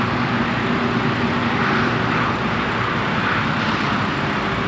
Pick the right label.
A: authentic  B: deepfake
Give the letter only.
A